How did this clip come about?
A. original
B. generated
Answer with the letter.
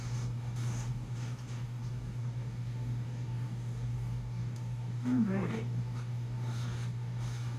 B